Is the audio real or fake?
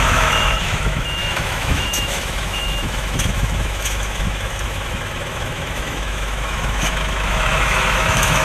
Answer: fake